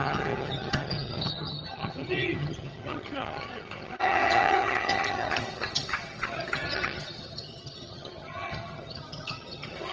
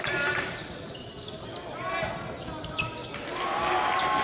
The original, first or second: second